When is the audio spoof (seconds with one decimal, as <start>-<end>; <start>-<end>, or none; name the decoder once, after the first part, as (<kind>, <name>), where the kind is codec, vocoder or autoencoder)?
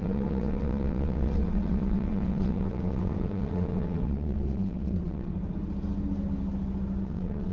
0.0-5.3 (vocoder, WaveNeXt); 7.0-7.5